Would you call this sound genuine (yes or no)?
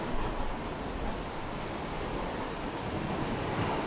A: yes